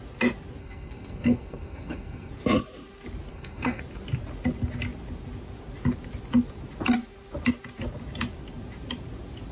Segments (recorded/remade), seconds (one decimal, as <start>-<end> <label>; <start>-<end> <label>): 0.0-0.6 recorded; 0.6-2.3 remade; 2.3-3.3 recorded; 3.3-3.8 remade; 3.8-9.5 recorded